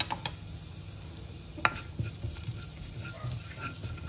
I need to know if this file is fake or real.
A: real